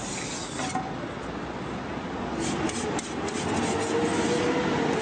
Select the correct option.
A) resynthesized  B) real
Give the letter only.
B